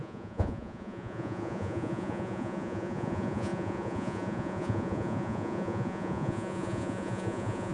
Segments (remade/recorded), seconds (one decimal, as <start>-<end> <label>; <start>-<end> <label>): 0.0-7.7 remade